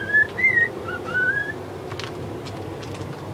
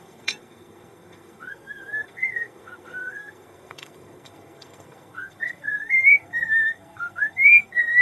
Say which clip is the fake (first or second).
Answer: second